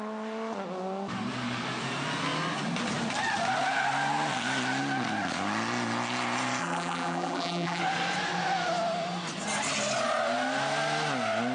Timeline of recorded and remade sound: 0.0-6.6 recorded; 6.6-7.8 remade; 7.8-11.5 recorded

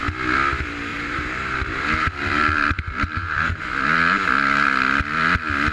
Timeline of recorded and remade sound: 0.0-0.9 recorded; 0.9-3.6 remade; 3.6-5.7 recorded

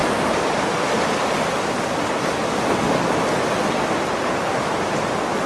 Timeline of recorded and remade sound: 0.0-5.5 recorded

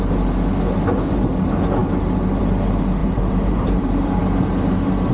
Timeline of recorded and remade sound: 0.0-3.0 recorded; 3.0-4.2 remade; 4.2-5.1 recorded